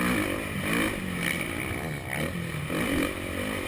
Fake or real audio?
real